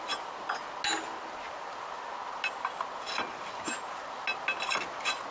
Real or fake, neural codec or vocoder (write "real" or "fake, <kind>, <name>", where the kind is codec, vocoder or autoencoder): real